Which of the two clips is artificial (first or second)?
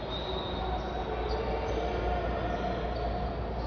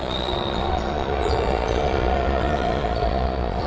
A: second